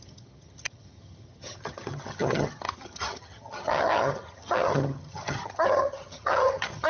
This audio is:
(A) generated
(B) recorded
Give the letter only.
A